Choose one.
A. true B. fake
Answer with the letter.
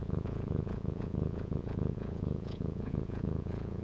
B